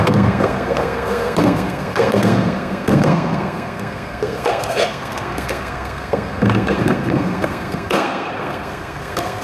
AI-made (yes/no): yes